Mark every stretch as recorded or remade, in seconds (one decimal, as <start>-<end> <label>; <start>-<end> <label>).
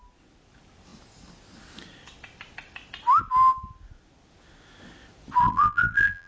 0.0-5.4 recorded; 5.4-6.3 remade